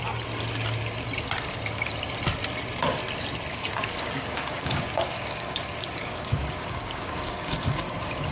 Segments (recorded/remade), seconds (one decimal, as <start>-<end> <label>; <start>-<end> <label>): 0.0-3.5 recorded; 3.5-7.8 remade; 7.8-8.3 recorded

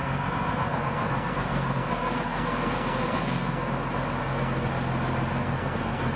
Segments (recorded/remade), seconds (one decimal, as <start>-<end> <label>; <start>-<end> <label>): 0.0-3.7 remade; 3.7-4.2 recorded; 4.2-4.7 remade; 4.7-5.4 recorded; 5.4-6.2 remade

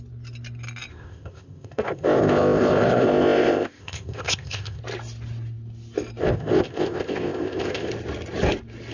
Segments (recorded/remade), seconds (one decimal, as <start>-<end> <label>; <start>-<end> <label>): 0.0-0.9 recorded; 0.9-4.8 remade; 4.8-6.2 recorded; 6.2-7.9 remade; 7.9-8.9 recorded

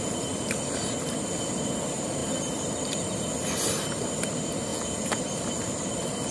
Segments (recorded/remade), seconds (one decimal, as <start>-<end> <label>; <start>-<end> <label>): 0.0-4.7 recorded; 4.7-5.2 remade; 5.2-6.3 recorded

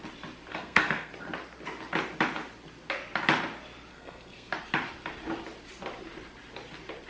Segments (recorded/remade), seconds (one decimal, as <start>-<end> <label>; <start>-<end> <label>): 0.0-0.5 recorded; 0.5-1.1 remade; 1.1-3.9 recorded; 3.9-4.5 remade; 4.5-7.1 recorded

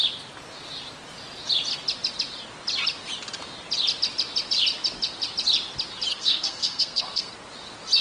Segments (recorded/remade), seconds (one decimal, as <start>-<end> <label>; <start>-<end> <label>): 0.0-6.1 recorded; 6.1-7.3 remade; 7.3-8.0 recorded

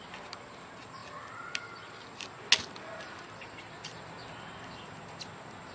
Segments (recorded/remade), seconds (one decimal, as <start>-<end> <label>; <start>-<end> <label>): 0.0-5.7 recorded

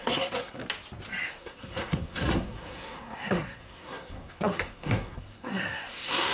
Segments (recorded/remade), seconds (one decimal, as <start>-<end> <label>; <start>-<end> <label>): 0.0-0.6 remade; 0.6-1.3 recorded; 1.3-6.3 remade